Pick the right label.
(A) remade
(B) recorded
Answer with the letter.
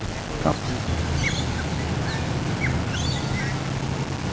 B